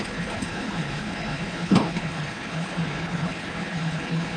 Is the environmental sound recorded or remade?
remade